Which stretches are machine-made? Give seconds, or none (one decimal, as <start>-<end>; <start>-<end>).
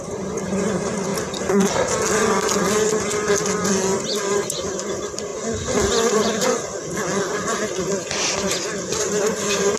0.0-1.1; 4.3-5.3; 6.1-6.8; 9.0-9.8